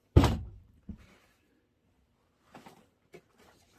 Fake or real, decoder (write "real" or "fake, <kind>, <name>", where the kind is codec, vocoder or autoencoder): fake, vocoder, BigVGAN v2